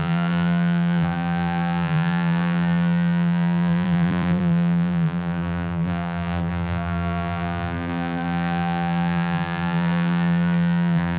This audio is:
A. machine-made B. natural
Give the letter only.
A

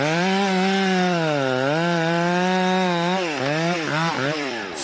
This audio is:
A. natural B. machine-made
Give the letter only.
B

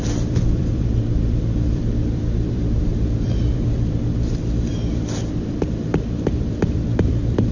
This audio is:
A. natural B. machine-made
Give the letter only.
B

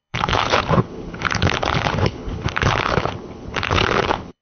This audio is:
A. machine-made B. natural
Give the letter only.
A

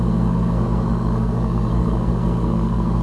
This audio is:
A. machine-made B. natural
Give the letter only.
A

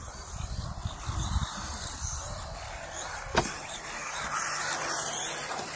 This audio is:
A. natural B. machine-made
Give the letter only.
B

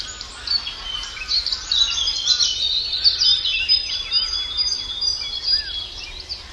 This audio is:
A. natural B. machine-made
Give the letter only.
A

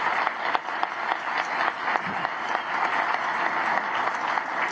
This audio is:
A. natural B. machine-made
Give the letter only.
A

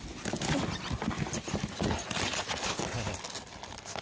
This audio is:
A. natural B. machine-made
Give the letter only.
A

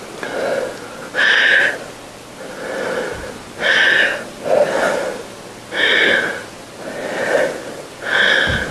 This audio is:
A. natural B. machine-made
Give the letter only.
A